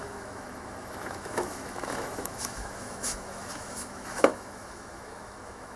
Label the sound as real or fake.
fake